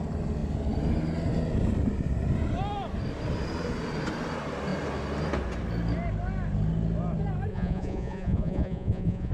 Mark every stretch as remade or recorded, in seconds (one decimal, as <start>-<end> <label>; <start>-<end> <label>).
0.0-7.5 recorded; 7.5-9.3 remade